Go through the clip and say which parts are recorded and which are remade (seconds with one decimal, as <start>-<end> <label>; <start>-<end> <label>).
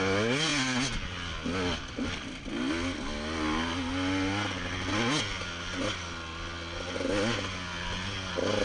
0.0-8.6 recorded